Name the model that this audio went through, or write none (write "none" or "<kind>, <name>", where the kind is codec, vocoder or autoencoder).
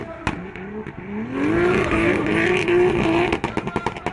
none